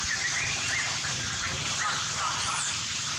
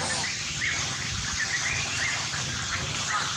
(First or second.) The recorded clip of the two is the second